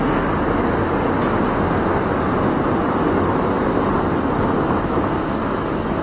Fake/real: real